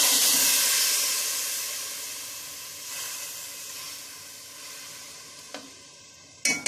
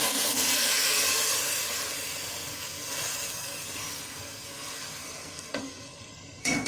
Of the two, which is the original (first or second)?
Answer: first